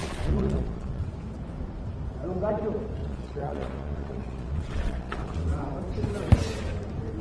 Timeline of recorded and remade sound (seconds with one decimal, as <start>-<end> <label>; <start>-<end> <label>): 0.0-1.0 remade; 1.0-3.0 recorded; 3.0-5.6 remade; 5.6-7.2 recorded